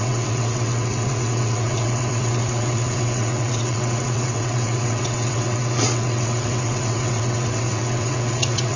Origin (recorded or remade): remade